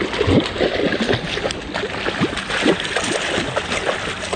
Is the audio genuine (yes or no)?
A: yes